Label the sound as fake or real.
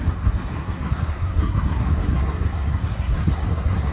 fake